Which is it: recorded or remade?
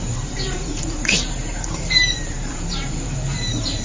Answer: remade